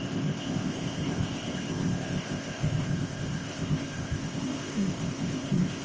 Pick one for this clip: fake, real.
fake